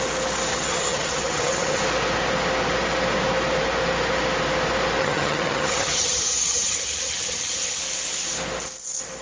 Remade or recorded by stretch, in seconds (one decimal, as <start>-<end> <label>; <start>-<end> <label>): 0.0-0.5 recorded; 0.5-1.8 remade; 1.8-5.0 recorded; 5.0-7.8 remade; 7.8-9.2 recorded